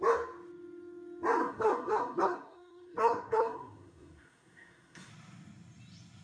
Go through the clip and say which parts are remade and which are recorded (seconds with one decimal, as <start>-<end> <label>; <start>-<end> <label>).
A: 0.0-1.4 recorded; 1.4-5.1 remade; 5.1-6.2 recorded